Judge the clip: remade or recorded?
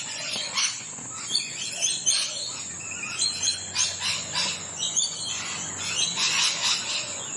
remade